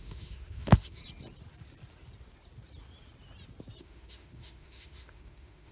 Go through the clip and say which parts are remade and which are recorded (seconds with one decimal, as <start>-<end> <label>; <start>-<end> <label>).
0.0-1.0 remade; 1.0-3.8 recorded; 3.8-5.7 remade